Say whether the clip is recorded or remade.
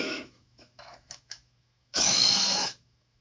remade